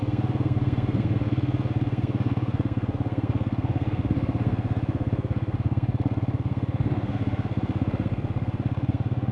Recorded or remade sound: remade